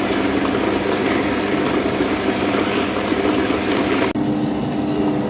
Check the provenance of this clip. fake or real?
real